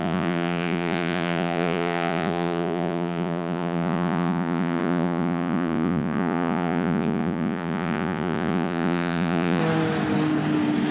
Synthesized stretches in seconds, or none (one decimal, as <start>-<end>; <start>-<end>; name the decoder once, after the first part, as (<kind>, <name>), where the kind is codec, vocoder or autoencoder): 0.0-9.6 (vocoder, Vocos)